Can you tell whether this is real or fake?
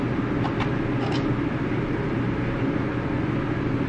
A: real